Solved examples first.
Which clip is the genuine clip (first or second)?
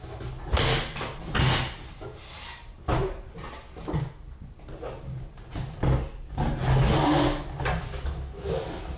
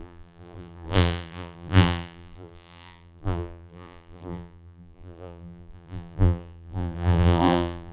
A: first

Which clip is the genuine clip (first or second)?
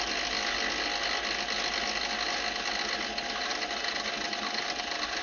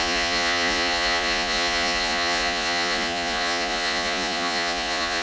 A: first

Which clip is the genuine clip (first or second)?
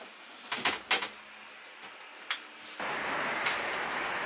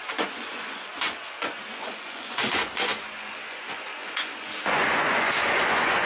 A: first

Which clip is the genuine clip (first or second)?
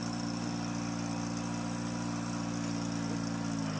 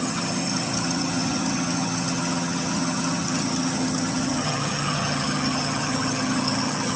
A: first